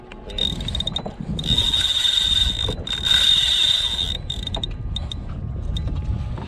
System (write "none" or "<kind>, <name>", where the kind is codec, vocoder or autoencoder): none